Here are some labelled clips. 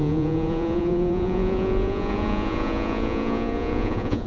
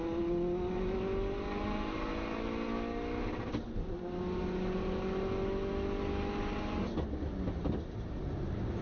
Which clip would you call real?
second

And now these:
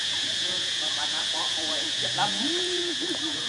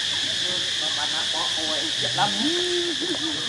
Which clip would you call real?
second